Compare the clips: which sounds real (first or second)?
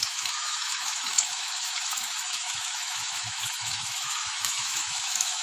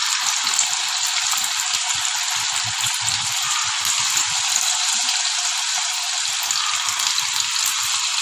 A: second